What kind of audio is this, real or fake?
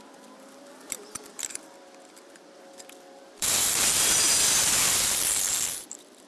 fake